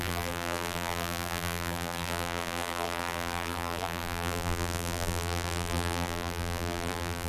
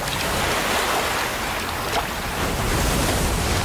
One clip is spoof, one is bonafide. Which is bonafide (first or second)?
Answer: second